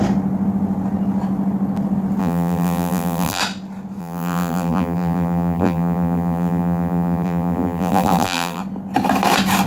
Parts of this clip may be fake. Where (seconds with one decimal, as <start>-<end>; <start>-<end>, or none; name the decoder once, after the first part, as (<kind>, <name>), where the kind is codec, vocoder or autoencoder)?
2.2-3.4 (vocoder, BigVGAN v2); 4.0-8.6